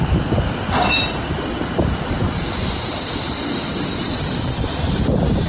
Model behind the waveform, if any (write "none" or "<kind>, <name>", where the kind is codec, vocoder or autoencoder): vocoder, BigVGAN v2